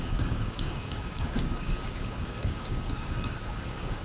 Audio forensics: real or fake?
fake